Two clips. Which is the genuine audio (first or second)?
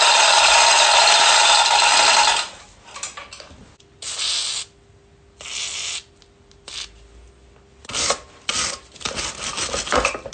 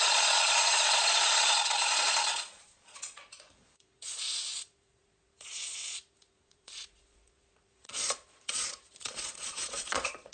first